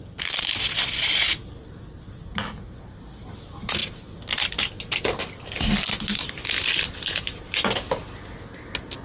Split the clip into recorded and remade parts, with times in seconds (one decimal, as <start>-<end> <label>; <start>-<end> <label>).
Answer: 0.0-3.8 recorded; 3.8-5.2 remade; 5.2-9.0 recorded